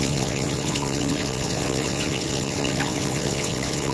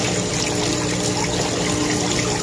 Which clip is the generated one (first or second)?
first